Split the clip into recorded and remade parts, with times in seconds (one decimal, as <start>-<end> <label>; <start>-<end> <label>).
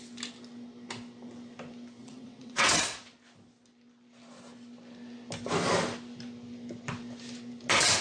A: 0.0-2.0 recorded; 2.0-3.0 remade; 3.0-8.0 recorded